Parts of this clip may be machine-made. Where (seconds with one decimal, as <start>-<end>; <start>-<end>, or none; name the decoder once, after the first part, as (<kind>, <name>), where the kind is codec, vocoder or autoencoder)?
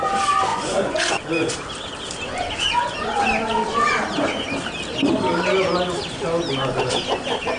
0.5-1.2 (vocoder, Vocos)